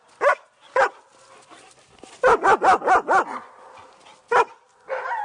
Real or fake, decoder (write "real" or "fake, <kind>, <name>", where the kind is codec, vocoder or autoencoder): real